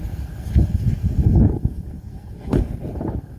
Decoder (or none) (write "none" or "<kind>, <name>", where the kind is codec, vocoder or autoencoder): codec, SNAC